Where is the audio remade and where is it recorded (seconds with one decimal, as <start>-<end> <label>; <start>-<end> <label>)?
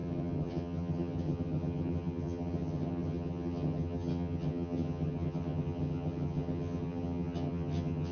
0.0-8.1 remade